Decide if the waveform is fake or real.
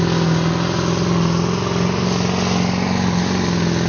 real